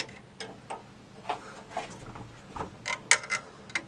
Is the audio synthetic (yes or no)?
no